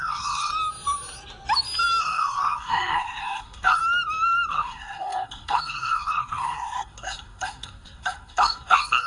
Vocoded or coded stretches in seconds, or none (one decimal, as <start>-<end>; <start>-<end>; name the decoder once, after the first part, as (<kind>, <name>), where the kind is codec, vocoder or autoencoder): 0.0-0.5 (codec, SNAC); 2.0-3.8; 4.5-9.1